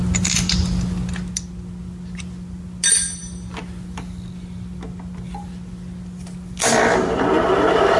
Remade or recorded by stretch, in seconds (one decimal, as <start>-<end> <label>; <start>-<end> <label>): 0.0-8.0 recorded